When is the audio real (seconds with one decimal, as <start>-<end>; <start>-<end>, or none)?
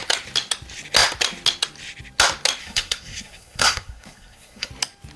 0.0-2.6; 4.7-5.2